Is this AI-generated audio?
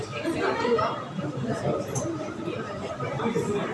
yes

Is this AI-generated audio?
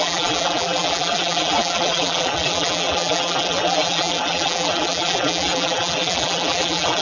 yes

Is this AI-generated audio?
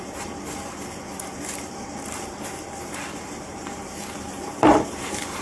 yes